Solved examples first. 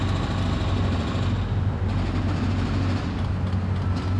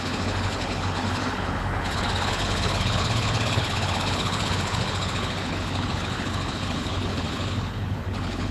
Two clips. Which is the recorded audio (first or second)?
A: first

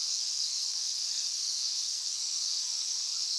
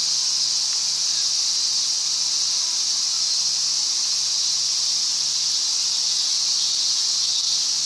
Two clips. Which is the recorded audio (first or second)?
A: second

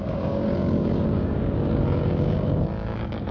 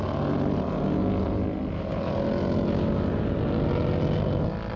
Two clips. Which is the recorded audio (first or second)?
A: second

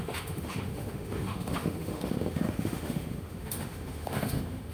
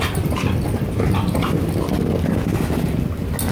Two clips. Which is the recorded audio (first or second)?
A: second